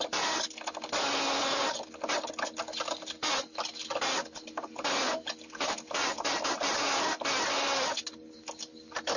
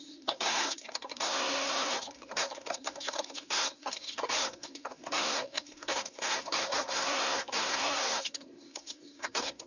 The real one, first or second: first